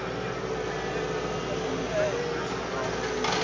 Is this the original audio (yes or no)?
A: yes